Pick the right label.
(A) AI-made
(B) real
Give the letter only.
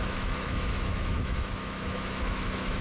A